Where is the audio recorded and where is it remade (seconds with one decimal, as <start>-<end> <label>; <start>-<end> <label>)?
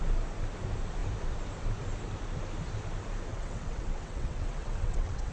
0.0-3.3 recorded; 3.3-5.3 remade